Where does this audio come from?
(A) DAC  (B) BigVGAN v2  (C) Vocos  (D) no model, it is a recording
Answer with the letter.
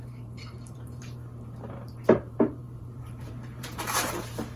B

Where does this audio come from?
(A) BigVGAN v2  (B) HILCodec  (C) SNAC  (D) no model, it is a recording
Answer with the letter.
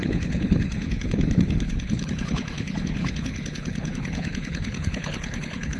B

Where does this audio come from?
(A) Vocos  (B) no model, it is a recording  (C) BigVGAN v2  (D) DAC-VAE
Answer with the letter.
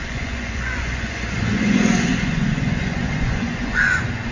A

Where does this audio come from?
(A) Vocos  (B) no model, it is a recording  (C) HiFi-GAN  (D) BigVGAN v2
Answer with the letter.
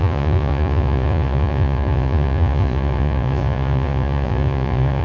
A